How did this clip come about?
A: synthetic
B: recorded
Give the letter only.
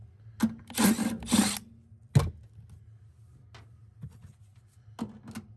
B